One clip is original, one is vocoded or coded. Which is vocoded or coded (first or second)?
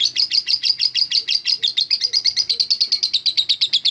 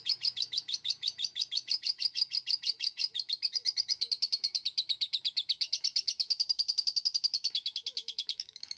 second